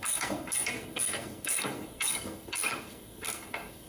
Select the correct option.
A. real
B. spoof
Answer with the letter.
B